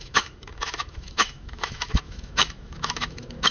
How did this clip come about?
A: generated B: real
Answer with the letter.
A